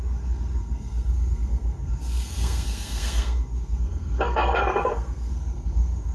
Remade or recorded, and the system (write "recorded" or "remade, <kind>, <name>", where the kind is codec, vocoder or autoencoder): remade, codec, SNAC